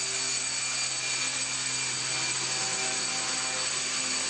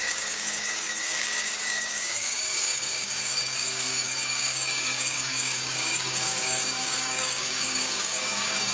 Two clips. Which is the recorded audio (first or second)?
first